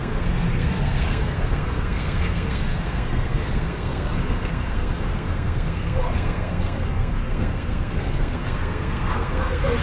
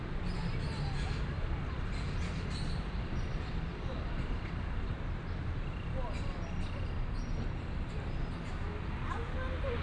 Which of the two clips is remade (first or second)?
first